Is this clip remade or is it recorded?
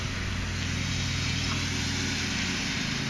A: recorded